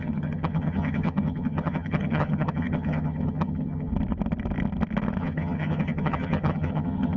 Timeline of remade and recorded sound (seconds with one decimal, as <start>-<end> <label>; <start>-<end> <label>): 0.0-3.9 remade; 3.9-5.2 recorded; 5.2-7.2 remade